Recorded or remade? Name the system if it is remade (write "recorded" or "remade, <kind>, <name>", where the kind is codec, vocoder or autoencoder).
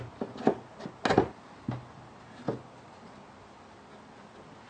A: recorded